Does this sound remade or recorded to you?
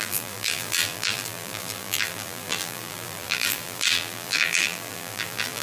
remade